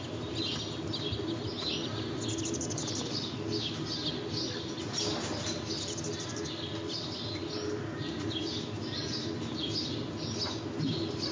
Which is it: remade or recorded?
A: recorded